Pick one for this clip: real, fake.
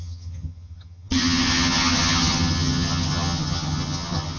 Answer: fake